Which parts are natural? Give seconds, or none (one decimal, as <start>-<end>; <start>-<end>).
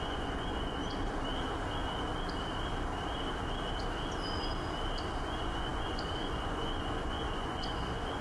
0.8-5.2